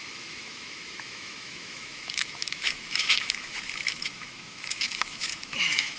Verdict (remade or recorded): remade